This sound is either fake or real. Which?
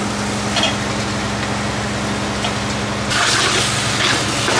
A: real